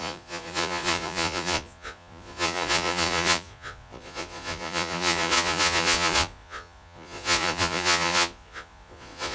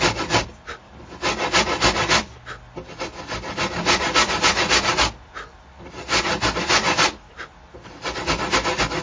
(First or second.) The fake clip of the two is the first